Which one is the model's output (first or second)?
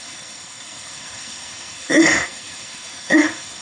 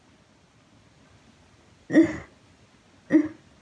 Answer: first